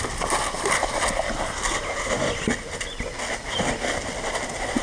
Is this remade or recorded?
recorded